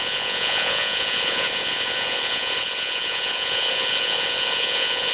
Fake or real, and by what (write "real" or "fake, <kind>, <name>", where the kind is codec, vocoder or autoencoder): fake, vocoder, Vocos